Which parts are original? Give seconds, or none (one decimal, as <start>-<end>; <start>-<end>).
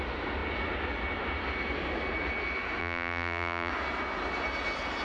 0.0-2.8; 3.7-5.0